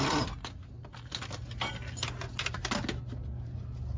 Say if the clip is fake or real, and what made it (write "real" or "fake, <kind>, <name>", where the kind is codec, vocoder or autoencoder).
real